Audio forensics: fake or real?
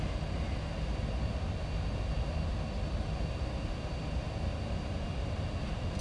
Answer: real